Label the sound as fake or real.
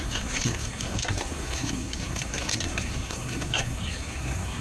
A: fake